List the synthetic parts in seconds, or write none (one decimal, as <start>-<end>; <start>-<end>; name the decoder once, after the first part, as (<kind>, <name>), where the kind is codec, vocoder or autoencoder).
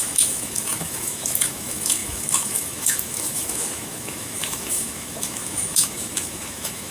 0.0-6.9 (autoencoder, DAC-VAE)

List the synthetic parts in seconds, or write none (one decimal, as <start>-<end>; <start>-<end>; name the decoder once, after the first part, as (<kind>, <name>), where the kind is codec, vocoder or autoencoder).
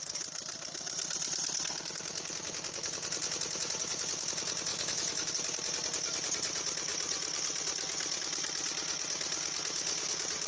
4.7-5.3 (autoencoder, DAC-VAE)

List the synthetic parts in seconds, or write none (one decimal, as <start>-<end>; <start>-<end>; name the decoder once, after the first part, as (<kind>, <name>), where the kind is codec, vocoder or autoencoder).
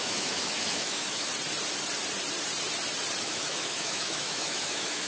0.0-1.3 (autoencoder, DAC-VAE); 3.2-5.1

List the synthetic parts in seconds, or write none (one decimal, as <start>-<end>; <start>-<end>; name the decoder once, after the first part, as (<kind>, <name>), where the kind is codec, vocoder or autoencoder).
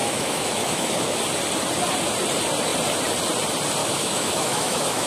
0.0-1.2 (autoencoder, DAC-VAE); 3.8-5.1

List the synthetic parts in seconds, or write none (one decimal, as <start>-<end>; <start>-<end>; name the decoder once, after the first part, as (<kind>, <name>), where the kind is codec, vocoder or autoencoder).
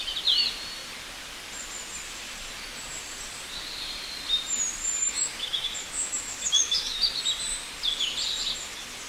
5.0-7.2 (autoencoder, DAC-VAE)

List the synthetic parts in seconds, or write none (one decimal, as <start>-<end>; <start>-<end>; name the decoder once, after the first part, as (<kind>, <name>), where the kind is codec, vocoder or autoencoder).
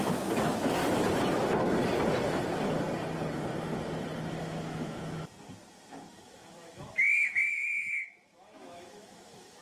0.0-0.8 (autoencoder, DAC-VAE); 4.4-5.0; 6.1-9.6